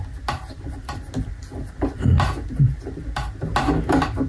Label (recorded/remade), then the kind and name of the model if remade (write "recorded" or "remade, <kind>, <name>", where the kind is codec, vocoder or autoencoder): recorded